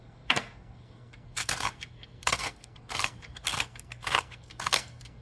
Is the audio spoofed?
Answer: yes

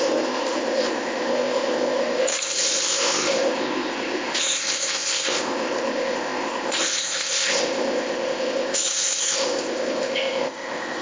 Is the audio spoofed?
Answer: yes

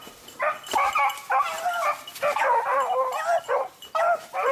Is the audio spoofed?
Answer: no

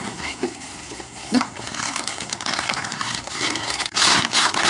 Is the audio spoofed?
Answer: yes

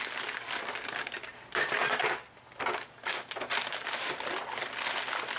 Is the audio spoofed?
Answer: no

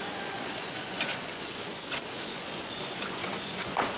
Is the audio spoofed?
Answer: yes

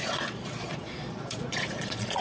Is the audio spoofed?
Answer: yes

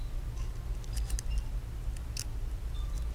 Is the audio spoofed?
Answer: no